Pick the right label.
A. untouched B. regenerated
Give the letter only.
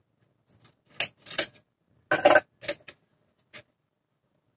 A